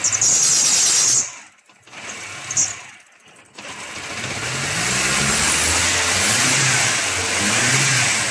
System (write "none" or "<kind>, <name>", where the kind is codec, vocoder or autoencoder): none